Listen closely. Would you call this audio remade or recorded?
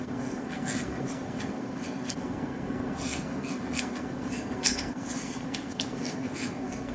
remade